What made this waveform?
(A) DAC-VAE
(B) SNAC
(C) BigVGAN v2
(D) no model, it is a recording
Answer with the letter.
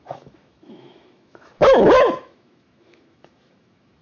A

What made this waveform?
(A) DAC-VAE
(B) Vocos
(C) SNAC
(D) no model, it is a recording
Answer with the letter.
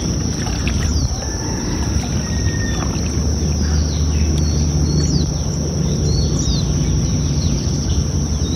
D